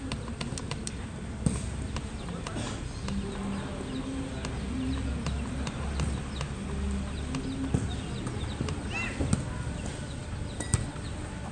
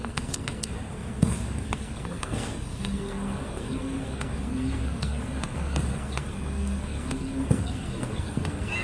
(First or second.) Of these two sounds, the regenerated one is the second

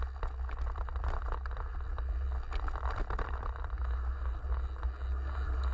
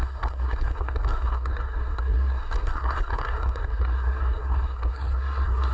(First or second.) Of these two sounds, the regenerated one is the second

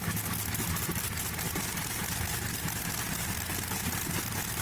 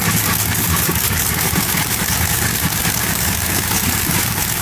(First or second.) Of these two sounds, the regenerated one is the second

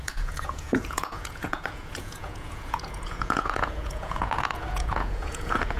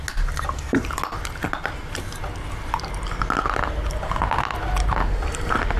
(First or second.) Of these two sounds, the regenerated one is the first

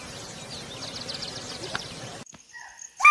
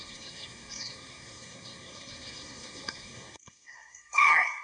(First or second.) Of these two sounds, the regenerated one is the second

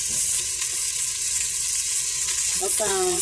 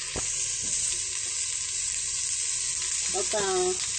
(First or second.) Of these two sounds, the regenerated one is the first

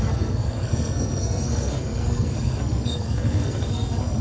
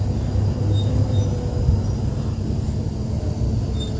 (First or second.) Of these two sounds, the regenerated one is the first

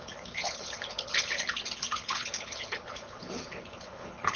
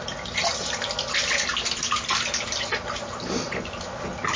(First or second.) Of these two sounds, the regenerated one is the first